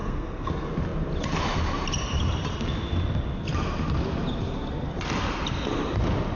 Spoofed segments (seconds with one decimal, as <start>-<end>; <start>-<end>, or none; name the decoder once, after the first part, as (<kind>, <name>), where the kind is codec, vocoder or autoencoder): 0.0-0.5 (codec, SNAC)